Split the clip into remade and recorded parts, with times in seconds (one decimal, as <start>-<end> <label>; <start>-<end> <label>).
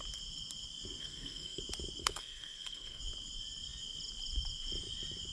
0.0-1.0 recorded; 1.0-1.6 remade; 1.6-2.0 recorded; 2.0-3.0 remade; 3.0-5.3 recorded